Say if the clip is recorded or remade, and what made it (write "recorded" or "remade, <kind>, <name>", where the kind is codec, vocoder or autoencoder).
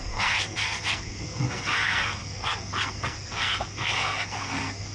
remade, codec, SNAC